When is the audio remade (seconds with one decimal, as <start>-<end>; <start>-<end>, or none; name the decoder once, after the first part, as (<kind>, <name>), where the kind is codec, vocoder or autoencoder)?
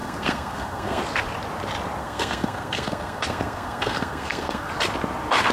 0.0-1.0 (codec, SNAC); 2.0-4.7